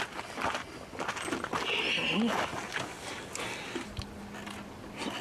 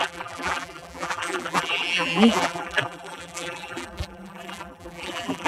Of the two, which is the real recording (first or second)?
first